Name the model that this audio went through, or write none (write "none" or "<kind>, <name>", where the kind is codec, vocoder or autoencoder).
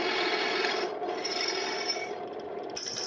none